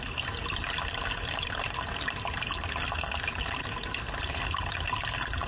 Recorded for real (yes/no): yes